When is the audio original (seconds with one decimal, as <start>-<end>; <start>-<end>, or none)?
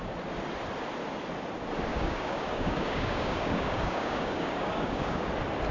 0.0-1.9; 5.3-5.7